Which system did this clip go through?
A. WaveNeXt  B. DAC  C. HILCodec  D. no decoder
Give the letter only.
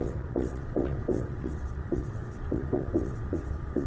A